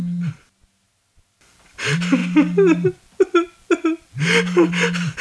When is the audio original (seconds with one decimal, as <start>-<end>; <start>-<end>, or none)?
0.0-5.2